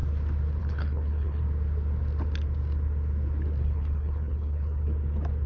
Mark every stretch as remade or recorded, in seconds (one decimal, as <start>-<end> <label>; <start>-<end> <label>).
0.0-0.6 recorded; 0.6-1.4 remade; 1.4-3.6 recorded; 3.6-4.9 remade; 4.9-5.5 recorded